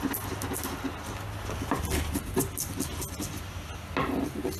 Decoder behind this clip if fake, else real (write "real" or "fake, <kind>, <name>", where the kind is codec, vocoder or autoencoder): real